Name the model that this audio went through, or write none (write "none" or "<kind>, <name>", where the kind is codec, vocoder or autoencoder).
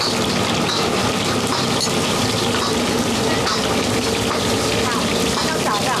none